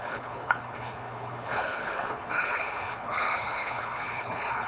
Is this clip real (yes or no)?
no